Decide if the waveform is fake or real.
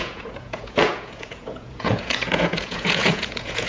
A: fake